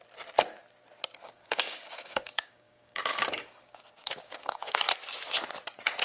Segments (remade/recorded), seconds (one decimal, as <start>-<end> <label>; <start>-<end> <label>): 0.0-1.2 recorded; 1.2-4.8 remade; 4.8-6.0 recorded